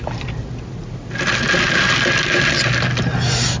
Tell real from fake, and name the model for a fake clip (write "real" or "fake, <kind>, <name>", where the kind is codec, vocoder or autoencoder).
real